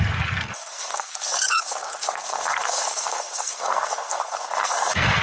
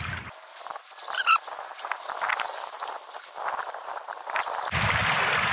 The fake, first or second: first